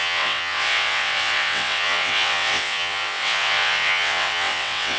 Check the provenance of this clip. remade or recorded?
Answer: remade